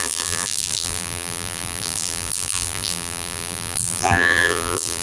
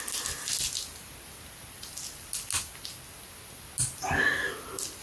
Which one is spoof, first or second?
first